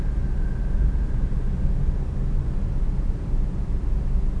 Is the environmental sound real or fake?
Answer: real